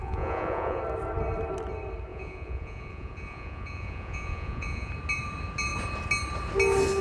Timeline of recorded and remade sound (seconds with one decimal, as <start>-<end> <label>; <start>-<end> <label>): 0.0-0.8 remade; 0.8-2.1 recorded; 2.1-4.9 remade; 4.9-7.0 recorded